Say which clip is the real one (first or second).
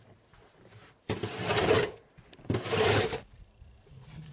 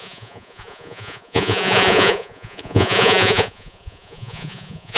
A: first